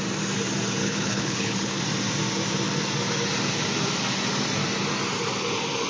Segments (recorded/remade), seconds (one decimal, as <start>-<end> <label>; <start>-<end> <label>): 0.0-0.8 recorded; 0.8-1.8 remade; 1.8-5.9 recorded